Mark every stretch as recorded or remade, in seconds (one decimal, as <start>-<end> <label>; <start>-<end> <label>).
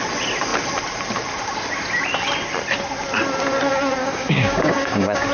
0.0-4.0 recorded; 4.0-5.3 remade